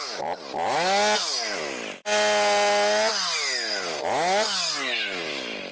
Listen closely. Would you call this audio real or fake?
real